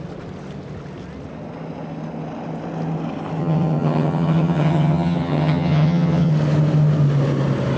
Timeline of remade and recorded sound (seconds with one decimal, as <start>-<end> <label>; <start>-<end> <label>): 0.0-3.4 recorded; 3.4-6.3 remade; 6.3-7.8 recorded